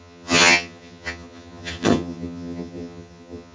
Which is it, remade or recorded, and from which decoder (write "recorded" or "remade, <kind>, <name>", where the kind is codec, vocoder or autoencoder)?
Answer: remade, vocoder, HiFi-GAN